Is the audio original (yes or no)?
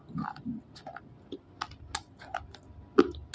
yes